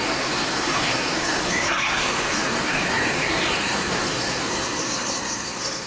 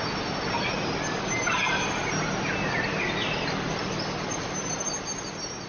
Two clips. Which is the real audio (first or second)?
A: second